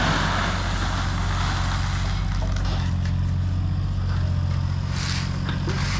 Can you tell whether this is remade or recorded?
recorded